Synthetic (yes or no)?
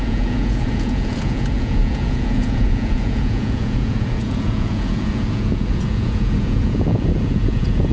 yes